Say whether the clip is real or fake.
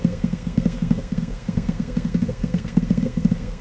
fake